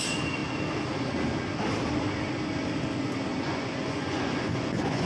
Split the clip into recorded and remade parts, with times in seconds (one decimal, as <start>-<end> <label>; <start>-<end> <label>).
0.0-3.3 recorded; 3.3-5.1 remade